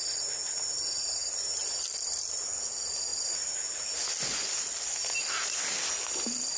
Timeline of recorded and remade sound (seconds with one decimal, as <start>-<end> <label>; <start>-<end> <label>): 0.0-6.6 recorded